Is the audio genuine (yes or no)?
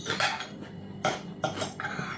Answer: yes